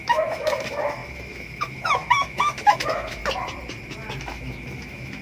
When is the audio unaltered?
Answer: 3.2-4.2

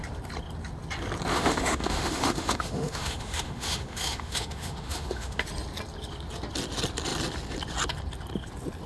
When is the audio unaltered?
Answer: 0.0-1.3; 5.4-8.9

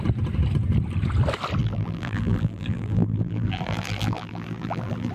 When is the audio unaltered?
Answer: 0.0-1.6